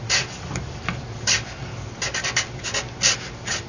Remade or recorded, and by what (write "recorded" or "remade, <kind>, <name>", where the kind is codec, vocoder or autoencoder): recorded